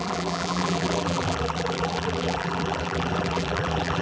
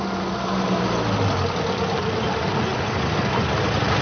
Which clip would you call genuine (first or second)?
second